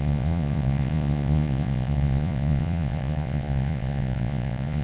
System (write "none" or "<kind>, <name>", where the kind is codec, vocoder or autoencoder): vocoder, Vocos